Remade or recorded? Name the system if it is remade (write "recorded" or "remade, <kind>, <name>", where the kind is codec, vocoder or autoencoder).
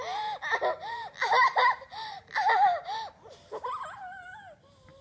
recorded